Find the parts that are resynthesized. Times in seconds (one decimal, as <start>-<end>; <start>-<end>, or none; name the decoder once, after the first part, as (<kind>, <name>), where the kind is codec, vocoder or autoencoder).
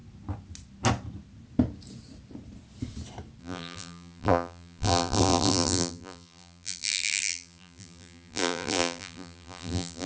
3.4-10.1 (vocoder, BigVGAN v2)